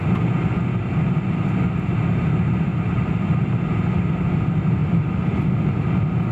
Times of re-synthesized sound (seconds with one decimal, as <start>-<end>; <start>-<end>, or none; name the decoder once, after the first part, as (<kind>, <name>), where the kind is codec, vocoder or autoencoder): 4.8-5.7 (vocoder, BigVGAN v2)